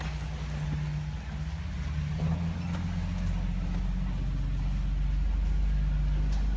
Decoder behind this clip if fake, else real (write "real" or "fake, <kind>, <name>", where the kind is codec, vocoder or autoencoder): real